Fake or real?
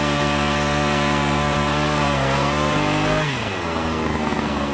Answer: fake